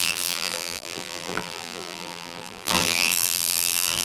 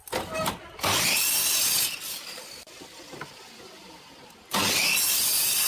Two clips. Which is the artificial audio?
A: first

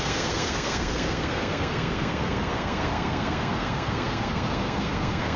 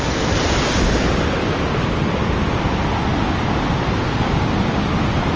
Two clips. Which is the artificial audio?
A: first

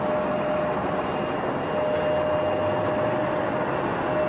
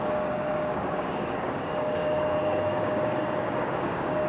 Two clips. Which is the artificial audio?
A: second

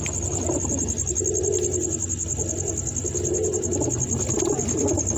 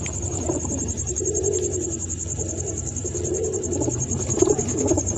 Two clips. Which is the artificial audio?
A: second